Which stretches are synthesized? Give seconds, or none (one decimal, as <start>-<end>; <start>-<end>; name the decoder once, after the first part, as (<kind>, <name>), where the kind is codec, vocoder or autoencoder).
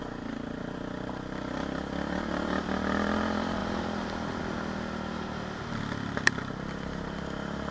3.6-4.4 (vocoder, BigVGAN v2)